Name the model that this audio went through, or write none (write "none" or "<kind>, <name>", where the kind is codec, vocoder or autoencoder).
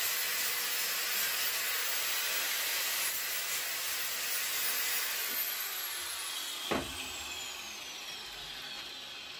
none